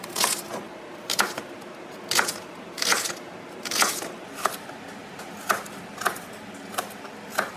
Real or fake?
real